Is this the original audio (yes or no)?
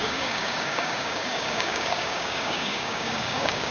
no